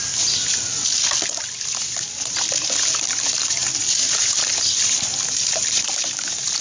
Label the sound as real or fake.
real